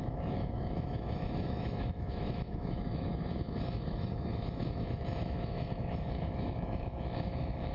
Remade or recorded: remade